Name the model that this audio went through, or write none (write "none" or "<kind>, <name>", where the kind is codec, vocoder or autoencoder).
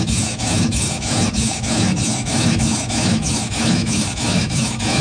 autoencoder, DAC-VAE